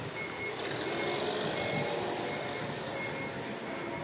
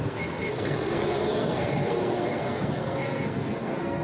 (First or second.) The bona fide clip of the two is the first